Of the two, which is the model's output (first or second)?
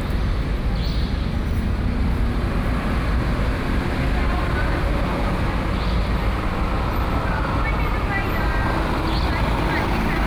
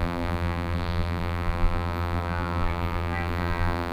second